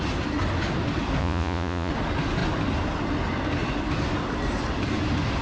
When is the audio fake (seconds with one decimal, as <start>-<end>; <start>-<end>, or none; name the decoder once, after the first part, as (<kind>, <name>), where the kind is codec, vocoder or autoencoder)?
1.2-1.9 (vocoder, Vocos)